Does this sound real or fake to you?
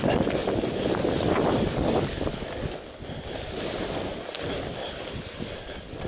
real